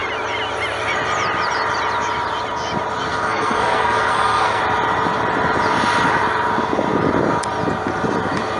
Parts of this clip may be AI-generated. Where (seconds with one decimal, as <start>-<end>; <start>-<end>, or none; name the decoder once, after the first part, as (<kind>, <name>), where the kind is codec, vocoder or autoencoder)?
3.1-4.6 (codec, SNAC)